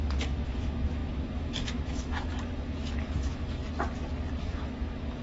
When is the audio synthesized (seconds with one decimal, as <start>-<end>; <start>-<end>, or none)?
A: 0.0-3.6; 4.4-5.2